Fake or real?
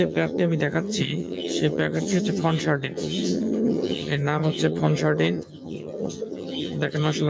fake